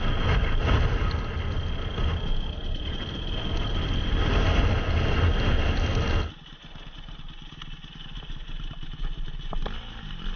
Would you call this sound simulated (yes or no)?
no